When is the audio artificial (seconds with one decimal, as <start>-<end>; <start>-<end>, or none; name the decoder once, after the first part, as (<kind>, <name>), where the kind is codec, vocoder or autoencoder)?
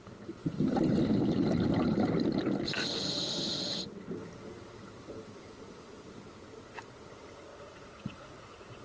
7.5-8.8 (vocoder, Vocos)